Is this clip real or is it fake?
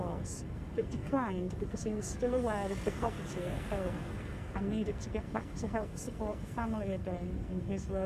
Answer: fake